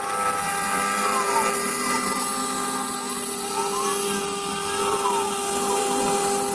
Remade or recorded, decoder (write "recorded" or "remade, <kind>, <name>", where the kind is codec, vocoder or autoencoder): recorded